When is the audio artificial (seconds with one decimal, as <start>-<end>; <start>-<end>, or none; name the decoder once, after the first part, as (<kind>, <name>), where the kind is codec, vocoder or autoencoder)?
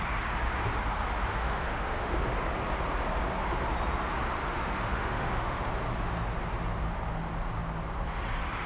1.3-2.1 (autoencoder, DAC-VAE); 4.4-5.7